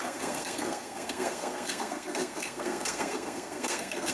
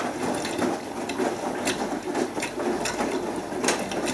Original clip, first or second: second